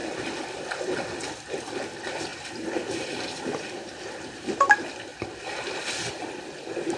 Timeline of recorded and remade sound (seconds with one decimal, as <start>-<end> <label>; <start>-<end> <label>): 0.0-1.5 recorded; 1.5-5.1 remade; 5.1-5.6 recorded; 5.6-7.0 remade